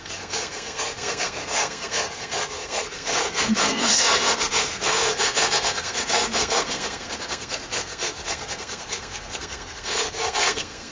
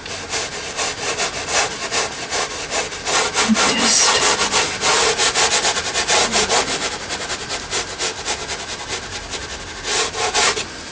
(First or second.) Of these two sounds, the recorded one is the second